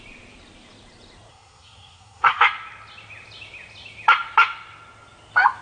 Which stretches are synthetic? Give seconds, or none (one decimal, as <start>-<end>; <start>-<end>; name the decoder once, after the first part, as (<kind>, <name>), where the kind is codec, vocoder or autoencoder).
1.3-2.4 (codec, SNAC)

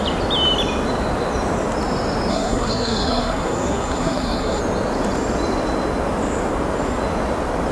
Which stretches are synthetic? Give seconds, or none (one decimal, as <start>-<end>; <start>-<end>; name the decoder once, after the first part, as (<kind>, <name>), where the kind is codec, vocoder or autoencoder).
2.3-4.6 (codec, SNAC)

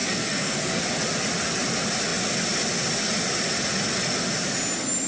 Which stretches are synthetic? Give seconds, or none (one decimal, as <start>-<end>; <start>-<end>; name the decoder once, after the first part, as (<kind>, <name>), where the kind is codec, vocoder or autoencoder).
0.0-0.8 (codec, SNAC)

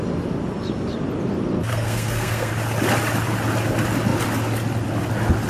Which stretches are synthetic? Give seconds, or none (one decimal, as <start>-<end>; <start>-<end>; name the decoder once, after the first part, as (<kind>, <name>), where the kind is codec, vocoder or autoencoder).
1.7-2.5 (codec, SNAC)

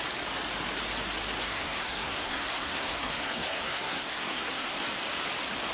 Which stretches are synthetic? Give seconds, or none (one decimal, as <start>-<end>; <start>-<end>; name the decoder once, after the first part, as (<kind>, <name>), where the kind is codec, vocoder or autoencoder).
1.4-4.8 (codec, SNAC)

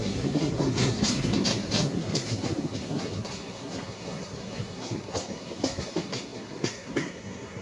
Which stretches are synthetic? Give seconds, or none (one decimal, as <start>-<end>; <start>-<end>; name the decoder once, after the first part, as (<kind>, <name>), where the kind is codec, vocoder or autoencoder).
0.0-7.6 (codec, SNAC)

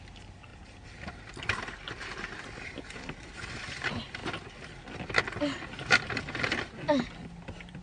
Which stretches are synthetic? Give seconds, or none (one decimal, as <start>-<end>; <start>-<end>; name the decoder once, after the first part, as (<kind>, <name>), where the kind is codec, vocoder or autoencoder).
none